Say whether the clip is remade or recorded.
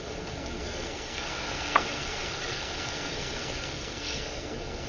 remade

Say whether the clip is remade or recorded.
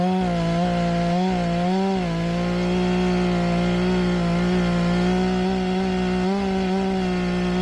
recorded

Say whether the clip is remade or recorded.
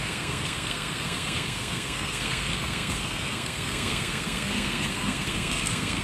remade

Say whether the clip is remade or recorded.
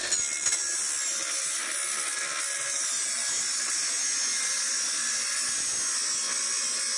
recorded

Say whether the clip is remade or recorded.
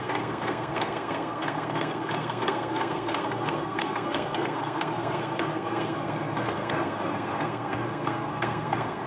remade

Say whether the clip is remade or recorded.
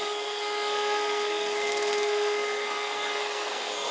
remade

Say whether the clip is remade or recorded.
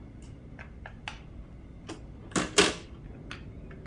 recorded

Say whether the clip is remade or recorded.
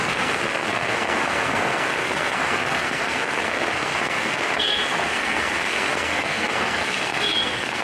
remade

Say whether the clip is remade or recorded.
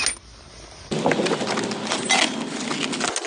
recorded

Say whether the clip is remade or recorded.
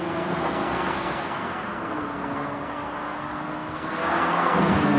remade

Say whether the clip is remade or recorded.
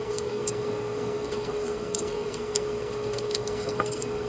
remade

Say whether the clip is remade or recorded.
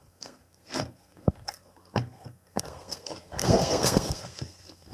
remade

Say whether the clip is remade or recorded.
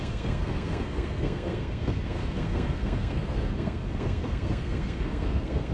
remade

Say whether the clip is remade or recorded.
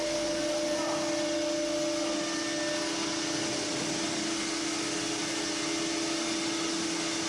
recorded